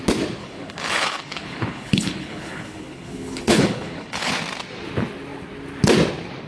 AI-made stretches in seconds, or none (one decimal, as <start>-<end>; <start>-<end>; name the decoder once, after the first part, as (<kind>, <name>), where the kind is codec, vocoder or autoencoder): 0.4-4.3 (codec, HILCodec)